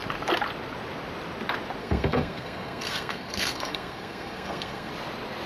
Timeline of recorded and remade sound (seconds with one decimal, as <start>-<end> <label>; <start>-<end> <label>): 0.0-1.8 recorded; 1.8-4.9 remade; 4.9-5.5 recorded